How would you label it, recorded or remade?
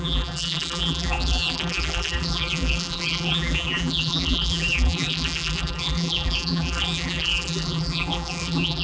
remade